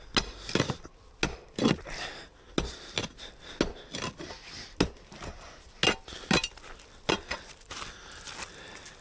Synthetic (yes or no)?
no